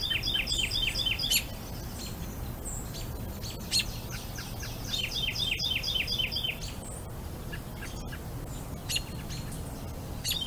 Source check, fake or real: real